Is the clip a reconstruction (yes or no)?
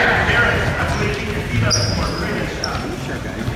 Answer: yes